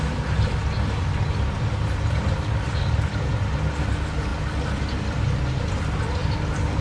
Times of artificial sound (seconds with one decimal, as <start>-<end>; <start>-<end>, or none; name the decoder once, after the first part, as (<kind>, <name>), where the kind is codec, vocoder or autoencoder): none